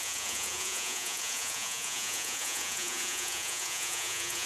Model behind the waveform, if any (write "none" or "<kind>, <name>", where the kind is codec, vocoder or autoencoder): vocoder, Vocos